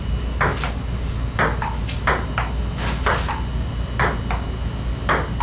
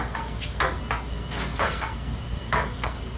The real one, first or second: first